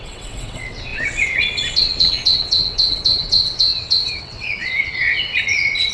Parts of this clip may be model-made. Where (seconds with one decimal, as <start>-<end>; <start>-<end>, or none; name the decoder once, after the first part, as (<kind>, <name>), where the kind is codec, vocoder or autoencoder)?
0.0-5.9 (vocoder, WaveNeXt)